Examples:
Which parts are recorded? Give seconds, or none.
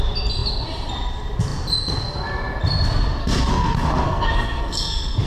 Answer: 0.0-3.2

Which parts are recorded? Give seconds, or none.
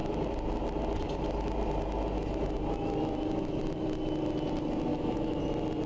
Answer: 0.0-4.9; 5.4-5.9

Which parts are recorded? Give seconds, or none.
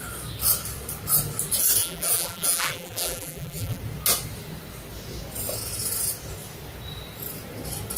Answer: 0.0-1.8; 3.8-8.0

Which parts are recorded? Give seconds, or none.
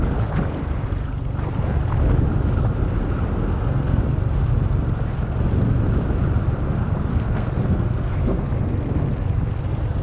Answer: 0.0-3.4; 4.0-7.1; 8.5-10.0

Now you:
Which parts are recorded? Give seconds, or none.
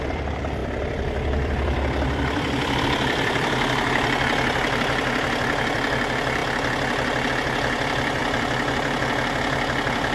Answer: 6.4-7.3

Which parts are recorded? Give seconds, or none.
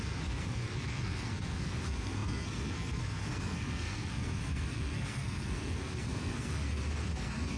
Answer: none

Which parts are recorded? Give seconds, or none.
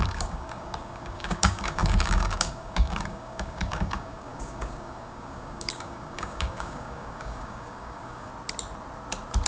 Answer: 8.3-9.5